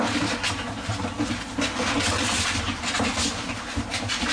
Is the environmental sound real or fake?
real